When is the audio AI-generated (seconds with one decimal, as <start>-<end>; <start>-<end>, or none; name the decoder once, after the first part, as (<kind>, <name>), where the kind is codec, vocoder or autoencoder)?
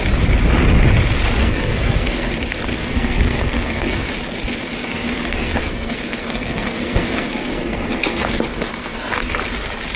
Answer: 1.4-2.3 (codec, SNAC); 2.7-4.1; 4.8-9.1